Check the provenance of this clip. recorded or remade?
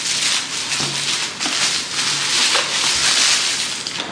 recorded